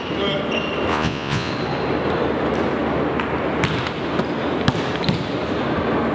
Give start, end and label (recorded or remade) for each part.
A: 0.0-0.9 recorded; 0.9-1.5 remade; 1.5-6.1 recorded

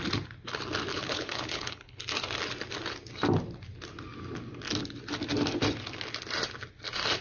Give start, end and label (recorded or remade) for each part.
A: 0.0-0.9 recorded; 0.9-2.0 remade; 2.0-7.2 recorded

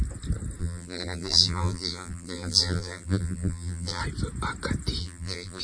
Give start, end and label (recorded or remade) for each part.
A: 0.0-0.6 recorded; 0.6-4.0 remade; 4.0-5.0 recorded; 5.0-5.6 remade

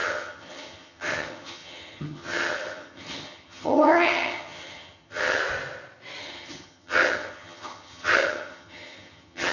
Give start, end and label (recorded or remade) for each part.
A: 0.0-5.4 remade; 5.4-6.2 recorded; 6.2-9.5 remade

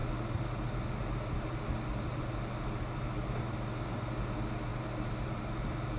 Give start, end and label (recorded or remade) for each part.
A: 0.0-6.0 recorded

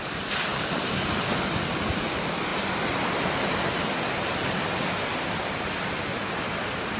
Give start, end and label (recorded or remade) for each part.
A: 0.0-7.0 recorded

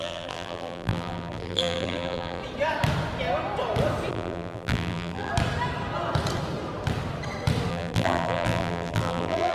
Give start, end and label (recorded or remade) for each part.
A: 0.0-2.4 remade; 2.4-4.1 recorded; 4.1-5.3 remade; 5.3-7.7 recorded; 7.7-9.5 remade

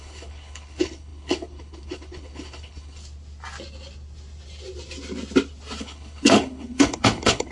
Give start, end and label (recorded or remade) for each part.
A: 0.0-3.0 remade; 3.0-5.8 recorded; 5.8-7.5 remade